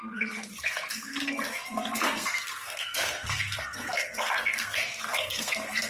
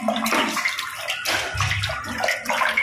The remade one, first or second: first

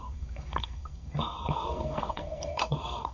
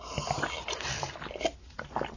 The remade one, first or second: first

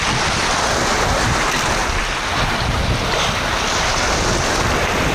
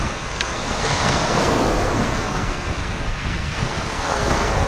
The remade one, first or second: second